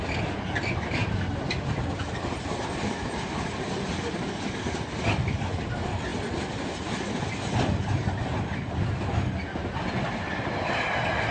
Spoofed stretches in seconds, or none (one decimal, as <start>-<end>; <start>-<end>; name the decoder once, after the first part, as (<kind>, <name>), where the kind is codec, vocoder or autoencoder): none